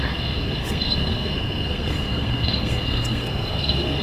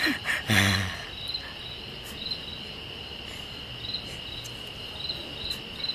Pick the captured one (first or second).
second